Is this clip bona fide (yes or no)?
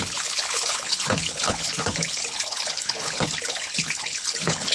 no